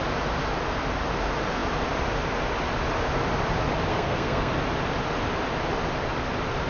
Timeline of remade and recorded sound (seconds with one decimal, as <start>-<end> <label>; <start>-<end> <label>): 0.0-3.9 recorded; 3.9-4.5 remade; 4.5-6.7 recorded